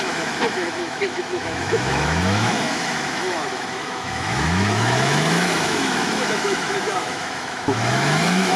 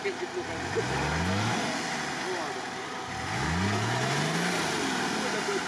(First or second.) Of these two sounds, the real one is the second